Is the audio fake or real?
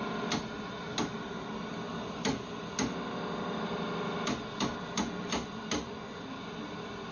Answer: real